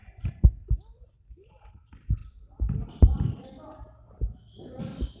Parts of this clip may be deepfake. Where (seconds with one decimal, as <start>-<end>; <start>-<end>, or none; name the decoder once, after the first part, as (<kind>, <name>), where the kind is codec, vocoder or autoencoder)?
none